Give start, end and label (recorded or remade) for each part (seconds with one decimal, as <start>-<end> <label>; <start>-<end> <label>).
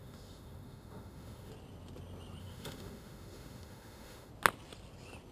0.0-1.5 remade; 1.5-2.4 recorded; 2.4-4.3 remade; 4.3-5.3 recorded